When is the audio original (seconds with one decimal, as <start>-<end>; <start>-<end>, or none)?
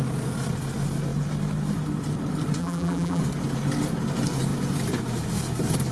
0.0-2.6; 3.2-5.9